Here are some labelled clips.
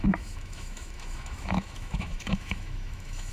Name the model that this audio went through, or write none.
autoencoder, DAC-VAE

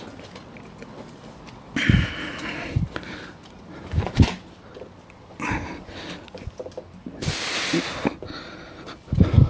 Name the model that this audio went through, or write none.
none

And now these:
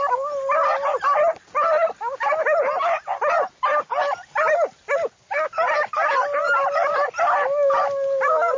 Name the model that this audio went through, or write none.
none